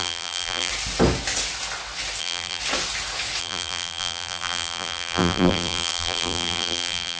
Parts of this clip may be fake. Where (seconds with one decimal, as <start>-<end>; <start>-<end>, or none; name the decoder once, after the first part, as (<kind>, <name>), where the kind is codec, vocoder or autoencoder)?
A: 0.0-0.7 (vocoder, BigVGAN v2); 2.2-2.6; 3.4-7.2